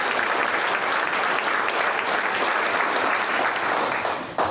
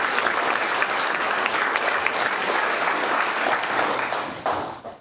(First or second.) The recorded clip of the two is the first